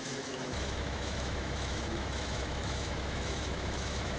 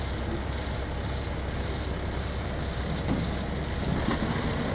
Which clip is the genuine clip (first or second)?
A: second